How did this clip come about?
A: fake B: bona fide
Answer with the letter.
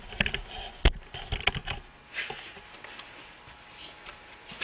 B